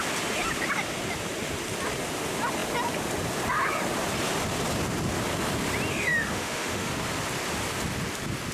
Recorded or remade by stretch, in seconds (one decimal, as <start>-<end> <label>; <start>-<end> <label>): 0.0-5.9 recorded; 5.9-6.9 remade; 6.9-8.5 recorded

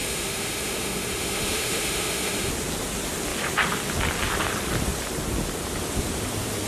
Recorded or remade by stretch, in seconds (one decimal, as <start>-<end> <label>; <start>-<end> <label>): 0.0-2.5 remade; 2.5-6.7 recorded

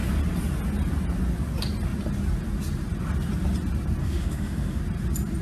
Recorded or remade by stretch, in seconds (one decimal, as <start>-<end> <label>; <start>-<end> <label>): 0.0-4.0 recorded; 4.0-4.8 remade; 4.8-5.4 recorded

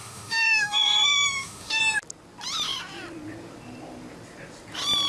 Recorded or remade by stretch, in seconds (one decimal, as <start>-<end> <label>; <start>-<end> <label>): 0.0-1.8 remade; 1.8-5.1 recorded

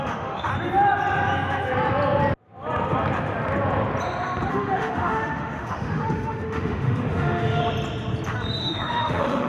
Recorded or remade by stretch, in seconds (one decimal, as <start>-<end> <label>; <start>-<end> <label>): 0.0-0.5 remade; 0.5-4.5 recorded; 4.5-7.6 remade; 7.6-8.6 recorded; 8.6-9.5 remade

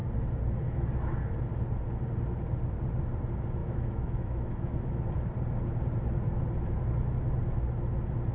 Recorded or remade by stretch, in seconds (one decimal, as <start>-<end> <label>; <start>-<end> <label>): 0.0-3.6 recorded; 3.6-5.0 remade; 5.0-8.3 recorded